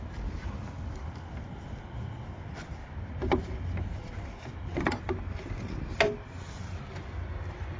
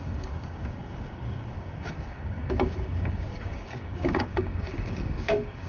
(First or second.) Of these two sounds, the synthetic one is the second